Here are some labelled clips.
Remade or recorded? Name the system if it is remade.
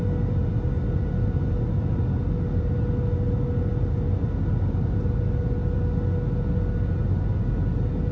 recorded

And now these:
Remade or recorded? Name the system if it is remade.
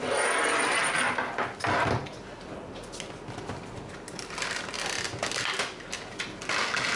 recorded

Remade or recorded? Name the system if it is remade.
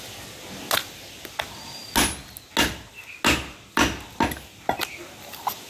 recorded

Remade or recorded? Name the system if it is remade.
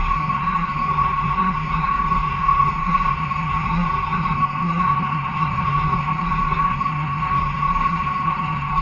remade, codec, SNAC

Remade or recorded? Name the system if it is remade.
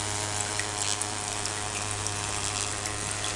recorded